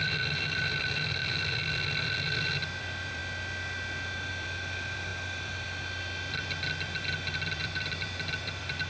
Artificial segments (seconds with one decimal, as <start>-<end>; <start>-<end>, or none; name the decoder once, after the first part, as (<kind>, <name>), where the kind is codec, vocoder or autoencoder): 0.0-1.2 (vocoder, BigVGAN v2); 2.8-3.2; 4.3-8.9